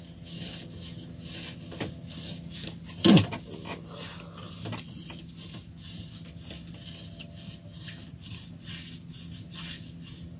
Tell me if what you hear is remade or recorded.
recorded